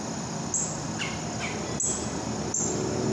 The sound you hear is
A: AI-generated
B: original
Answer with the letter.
B